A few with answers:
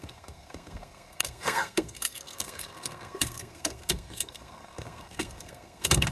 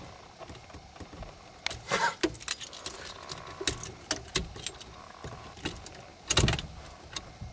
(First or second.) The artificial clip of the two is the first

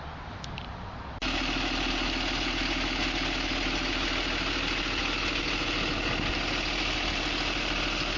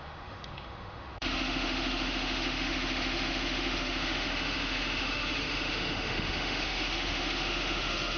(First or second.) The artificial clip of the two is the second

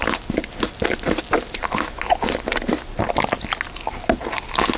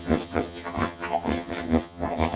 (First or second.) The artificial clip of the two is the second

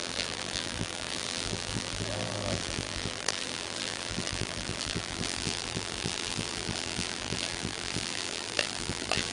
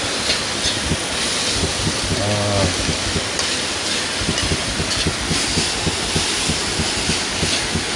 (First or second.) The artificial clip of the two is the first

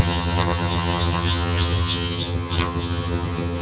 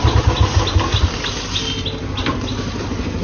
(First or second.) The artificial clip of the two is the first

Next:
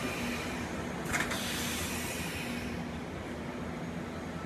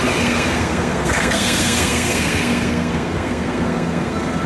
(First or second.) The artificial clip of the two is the second